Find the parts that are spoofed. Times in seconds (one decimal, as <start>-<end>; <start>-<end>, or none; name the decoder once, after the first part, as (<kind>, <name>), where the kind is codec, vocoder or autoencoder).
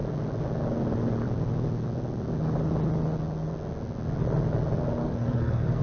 5.0-5.8 (codec, SNAC)